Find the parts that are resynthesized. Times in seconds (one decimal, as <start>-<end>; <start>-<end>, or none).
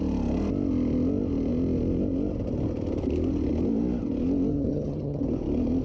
4.5-5.2